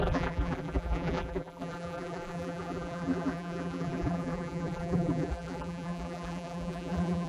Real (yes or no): no